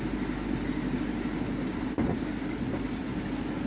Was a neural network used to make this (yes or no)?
no